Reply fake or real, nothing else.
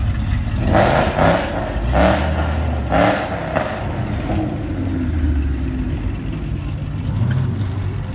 real